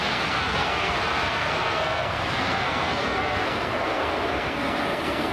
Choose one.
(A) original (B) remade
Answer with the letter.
B